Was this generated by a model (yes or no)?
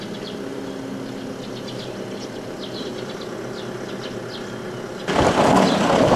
no